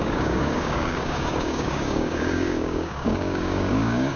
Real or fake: fake